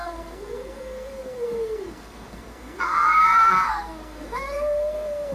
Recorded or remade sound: remade